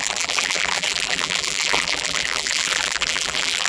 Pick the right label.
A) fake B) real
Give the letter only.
A